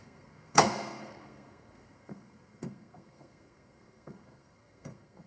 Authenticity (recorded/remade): remade